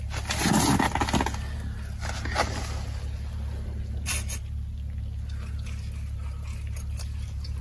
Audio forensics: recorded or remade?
recorded